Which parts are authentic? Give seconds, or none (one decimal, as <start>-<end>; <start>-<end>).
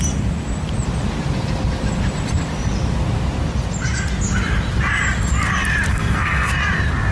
0.0-5.9; 6.5-7.1